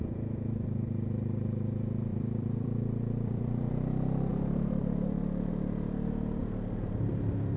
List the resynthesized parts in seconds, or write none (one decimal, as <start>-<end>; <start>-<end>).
2.1-3.7; 4.3-5.5; 6.4-7.6

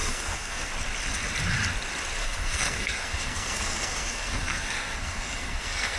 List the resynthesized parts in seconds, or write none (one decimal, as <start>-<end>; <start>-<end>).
0.0-0.7; 2.2-6.0